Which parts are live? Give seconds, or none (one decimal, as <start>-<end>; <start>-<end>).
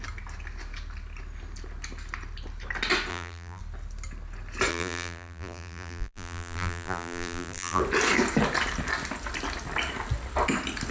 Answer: 0.0-3.1; 3.6-4.7; 7.8-10.9